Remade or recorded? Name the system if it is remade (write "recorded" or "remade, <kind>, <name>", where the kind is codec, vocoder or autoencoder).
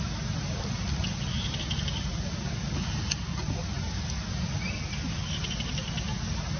recorded